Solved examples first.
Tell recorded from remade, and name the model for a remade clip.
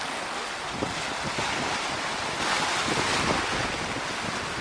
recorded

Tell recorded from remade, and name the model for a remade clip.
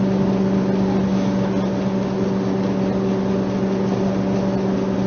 recorded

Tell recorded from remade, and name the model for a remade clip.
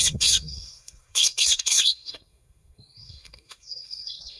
remade, codec, SNAC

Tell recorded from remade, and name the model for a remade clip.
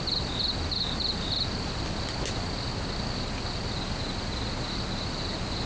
recorded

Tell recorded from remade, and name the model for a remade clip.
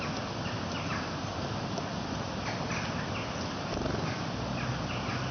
recorded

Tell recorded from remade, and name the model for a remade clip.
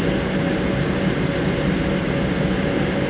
recorded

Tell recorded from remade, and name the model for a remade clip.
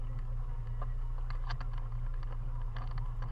recorded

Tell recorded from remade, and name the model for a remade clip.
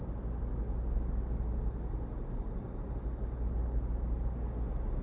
recorded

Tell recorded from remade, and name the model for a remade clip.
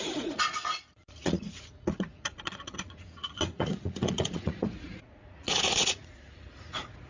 remade, vocoder, Vocos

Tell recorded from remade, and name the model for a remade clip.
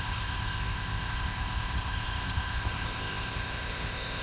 remade, codec, ZipCodec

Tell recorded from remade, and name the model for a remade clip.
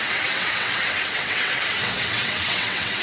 remade, vocoder, WaveNeXt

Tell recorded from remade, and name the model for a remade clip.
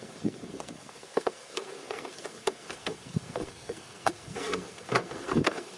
remade, codec, SNAC